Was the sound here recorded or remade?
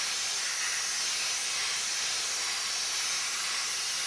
recorded